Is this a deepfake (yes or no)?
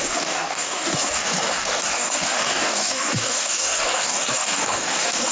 yes